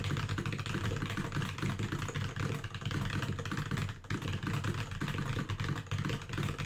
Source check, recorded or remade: recorded